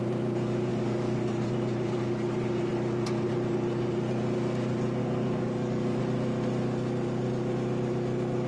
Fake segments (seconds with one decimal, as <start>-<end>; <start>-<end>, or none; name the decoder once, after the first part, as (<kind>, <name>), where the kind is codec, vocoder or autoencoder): 0.7-1.5 (codec, DAC); 5.0-6.0